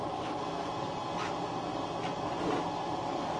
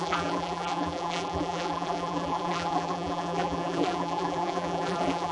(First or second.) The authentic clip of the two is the first